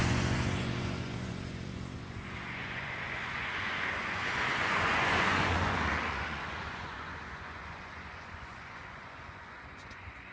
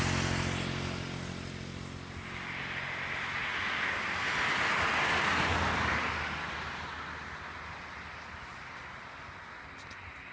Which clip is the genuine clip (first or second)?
second